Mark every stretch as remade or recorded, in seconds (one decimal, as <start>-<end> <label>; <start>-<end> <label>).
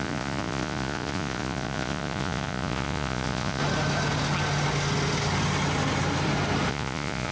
0.0-3.6 remade; 3.6-6.7 recorded; 6.7-7.3 remade